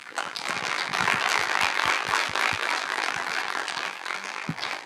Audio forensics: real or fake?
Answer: fake